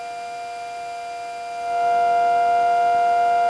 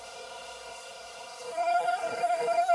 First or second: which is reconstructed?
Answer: second